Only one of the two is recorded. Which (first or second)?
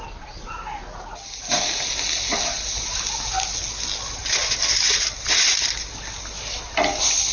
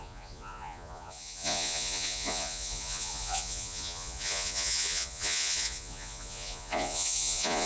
first